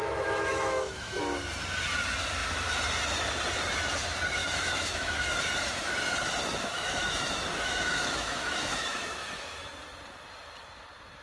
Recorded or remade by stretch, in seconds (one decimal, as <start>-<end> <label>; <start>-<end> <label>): 0.0-1.2 remade; 1.2-4.4 recorded; 4.4-5.4 remade; 5.4-6.5 recorded; 6.5-9.7 remade; 9.7-11.2 recorded